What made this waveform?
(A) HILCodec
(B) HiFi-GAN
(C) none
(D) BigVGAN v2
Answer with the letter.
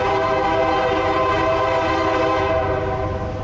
D